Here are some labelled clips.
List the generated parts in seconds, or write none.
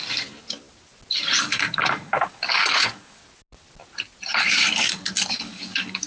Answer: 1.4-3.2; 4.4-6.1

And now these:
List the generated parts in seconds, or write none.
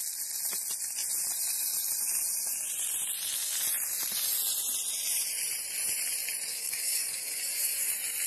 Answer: 6.5-7.9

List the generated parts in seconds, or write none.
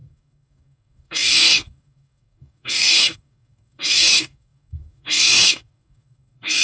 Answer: 0.0-6.6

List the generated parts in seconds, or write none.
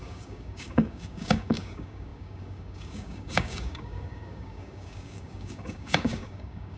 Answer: 0.0-6.8